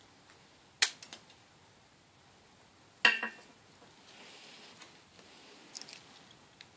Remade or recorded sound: recorded